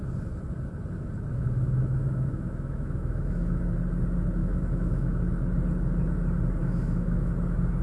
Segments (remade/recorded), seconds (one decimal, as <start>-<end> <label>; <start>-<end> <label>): 0.0-1.3 recorded; 1.3-3.6 remade; 3.6-4.4 recorded; 4.4-5.2 remade; 5.2-6.6 recorded; 6.6-7.3 remade; 7.3-7.8 recorded